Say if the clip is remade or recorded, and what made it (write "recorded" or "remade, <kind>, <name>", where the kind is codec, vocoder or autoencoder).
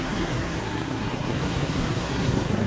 remade, codec, SNAC